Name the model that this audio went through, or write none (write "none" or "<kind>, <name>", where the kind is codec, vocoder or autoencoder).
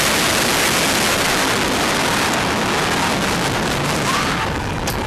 none